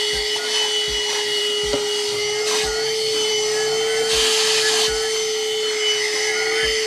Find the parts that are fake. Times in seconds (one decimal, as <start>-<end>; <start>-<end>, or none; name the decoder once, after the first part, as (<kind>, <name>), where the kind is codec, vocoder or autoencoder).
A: none